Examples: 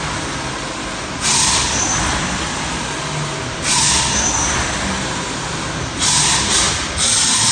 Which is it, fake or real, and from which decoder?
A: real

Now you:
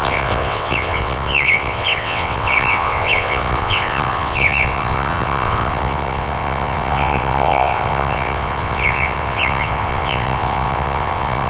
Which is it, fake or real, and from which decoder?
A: fake, vocoder, WaveNeXt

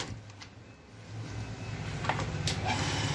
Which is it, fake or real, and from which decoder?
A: real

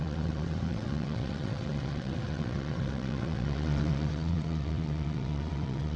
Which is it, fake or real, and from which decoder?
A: fake, vocoder, WaveNeXt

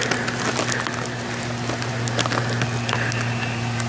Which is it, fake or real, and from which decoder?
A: real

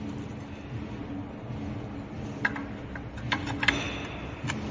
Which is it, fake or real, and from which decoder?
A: real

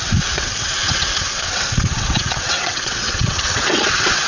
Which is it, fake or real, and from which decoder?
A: fake, vocoder, WaveNeXt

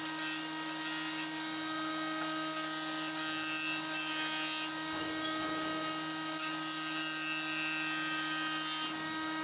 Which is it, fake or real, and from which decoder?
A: real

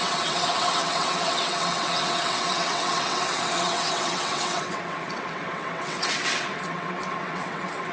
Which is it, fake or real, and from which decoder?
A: fake, vocoder, WaveNeXt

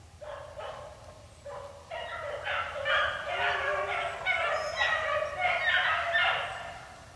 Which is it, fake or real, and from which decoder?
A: real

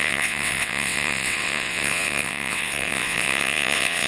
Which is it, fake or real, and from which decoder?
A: fake, vocoder, WaveNeXt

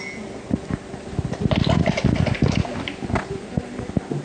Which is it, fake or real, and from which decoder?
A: real